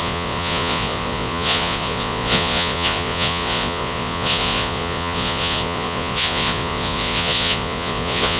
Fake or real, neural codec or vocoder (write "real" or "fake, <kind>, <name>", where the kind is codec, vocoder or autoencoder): fake, vocoder, Vocos